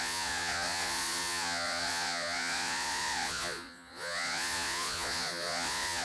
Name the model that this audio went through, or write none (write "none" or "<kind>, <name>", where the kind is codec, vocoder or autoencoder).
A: vocoder, Vocos